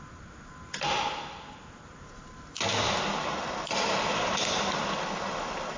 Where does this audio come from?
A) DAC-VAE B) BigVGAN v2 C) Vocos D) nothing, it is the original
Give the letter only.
D